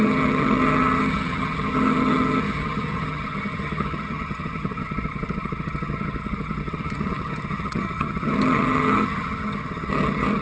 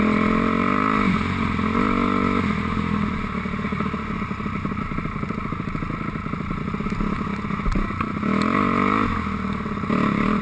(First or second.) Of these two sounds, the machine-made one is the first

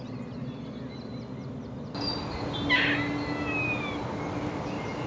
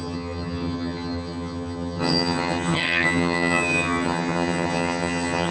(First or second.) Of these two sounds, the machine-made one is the second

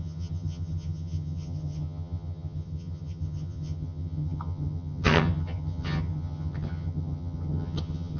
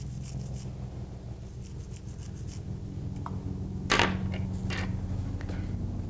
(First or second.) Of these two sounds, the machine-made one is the first